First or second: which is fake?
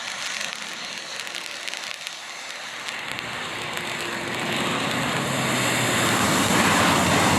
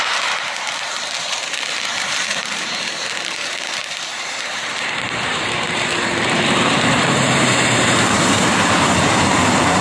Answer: second